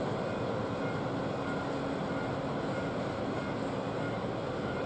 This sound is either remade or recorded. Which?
recorded